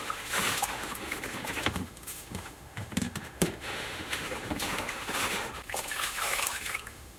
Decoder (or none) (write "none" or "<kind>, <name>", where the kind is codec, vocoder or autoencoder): autoencoder, DAC-VAE